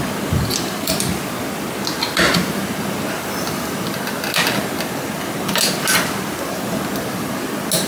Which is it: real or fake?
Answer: real